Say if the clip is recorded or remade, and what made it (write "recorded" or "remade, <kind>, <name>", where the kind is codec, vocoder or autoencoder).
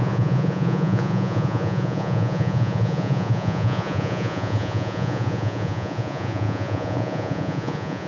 remade, vocoder, Vocos